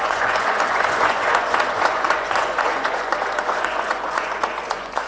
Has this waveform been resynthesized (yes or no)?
yes